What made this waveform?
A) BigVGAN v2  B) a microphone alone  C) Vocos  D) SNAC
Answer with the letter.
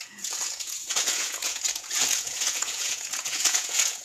C